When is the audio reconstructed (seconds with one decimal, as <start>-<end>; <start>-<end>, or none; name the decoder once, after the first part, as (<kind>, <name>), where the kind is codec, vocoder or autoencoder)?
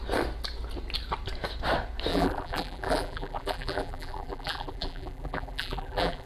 2.1-6.3 (vocoder, BigVGAN v2)